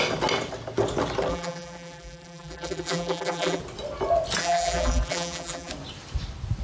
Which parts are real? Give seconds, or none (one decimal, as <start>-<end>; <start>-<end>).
0.0-1.3; 3.6-4.4; 5.7-6.6